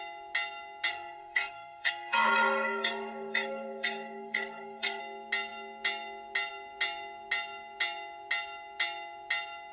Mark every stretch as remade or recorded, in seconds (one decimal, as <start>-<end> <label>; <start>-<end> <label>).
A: 0.0-0.9 recorded; 0.9-5.0 remade; 5.0-9.7 recorded